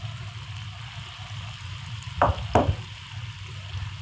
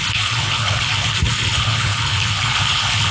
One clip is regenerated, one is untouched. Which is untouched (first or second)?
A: first